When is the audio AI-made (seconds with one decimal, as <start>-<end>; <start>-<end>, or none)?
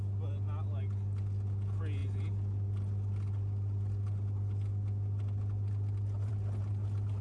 none